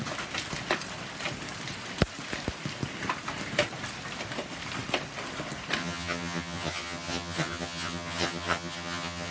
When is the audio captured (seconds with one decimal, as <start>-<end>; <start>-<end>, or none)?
0.0-5.8